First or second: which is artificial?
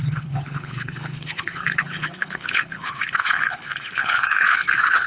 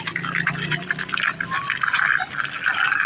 first